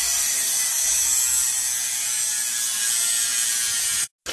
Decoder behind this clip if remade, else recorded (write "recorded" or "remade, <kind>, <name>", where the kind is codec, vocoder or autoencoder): recorded